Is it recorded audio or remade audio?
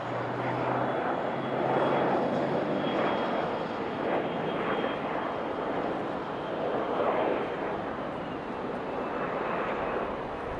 recorded